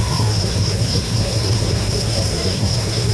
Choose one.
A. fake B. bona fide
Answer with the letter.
A